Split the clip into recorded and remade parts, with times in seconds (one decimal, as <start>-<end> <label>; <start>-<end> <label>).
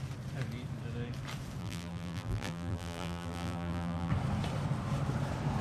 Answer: 0.0-1.6 recorded; 1.6-4.1 remade; 4.1-5.6 recorded